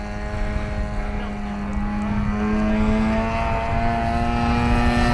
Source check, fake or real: real